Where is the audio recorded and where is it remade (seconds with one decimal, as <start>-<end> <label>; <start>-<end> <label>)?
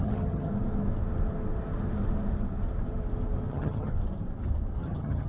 0.0-0.5 remade; 0.5-3.5 recorded; 3.5-3.9 remade; 3.9-4.8 recorded; 4.8-5.3 remade